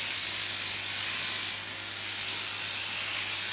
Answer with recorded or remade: recorded